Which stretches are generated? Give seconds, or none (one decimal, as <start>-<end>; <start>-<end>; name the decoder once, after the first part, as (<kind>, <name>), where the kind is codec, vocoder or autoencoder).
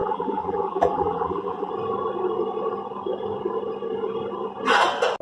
0.0-1.7 (vocoder, BigVGAN v2)